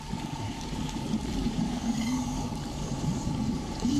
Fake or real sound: fake